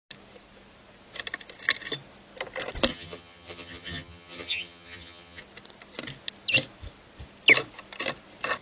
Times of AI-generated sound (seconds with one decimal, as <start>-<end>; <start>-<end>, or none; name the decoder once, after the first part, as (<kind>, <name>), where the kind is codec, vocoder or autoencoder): 2.9-5.4 (vocoder, HiFi-GAN)